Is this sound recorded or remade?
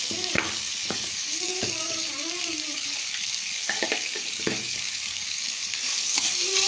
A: remade